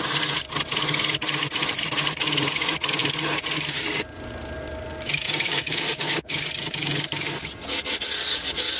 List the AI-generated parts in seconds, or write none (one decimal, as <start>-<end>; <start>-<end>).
4.9-6.4